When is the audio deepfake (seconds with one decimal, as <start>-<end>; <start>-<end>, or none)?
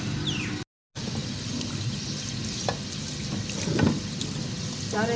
none